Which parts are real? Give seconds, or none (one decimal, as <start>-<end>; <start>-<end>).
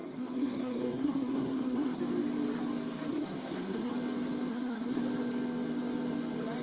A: 2.0-3.1; 3.9-4.5; 5.0-6.6